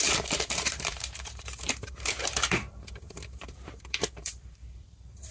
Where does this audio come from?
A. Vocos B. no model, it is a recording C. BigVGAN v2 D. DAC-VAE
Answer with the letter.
C